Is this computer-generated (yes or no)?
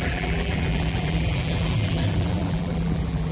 yes